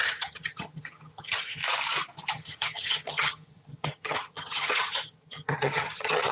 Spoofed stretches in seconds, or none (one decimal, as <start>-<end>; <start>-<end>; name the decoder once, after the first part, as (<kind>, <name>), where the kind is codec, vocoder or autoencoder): 0.0-1.6 (vocoder, HiFi-GAN); 2.3-6.3